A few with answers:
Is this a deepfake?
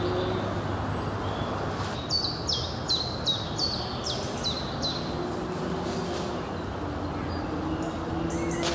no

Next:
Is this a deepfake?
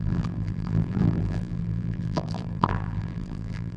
yes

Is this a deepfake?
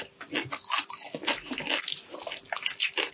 no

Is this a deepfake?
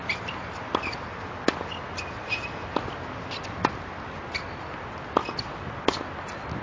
no